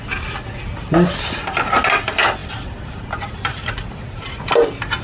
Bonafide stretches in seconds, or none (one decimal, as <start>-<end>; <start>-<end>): 0.0-2.4; 4.3-5.0